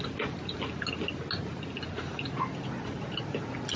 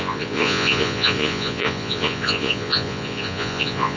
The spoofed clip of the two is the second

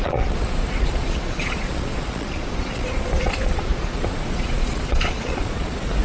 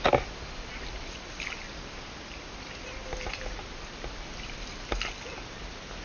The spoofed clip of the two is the first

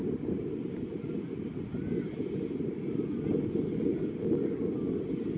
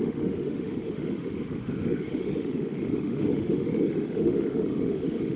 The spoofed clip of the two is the second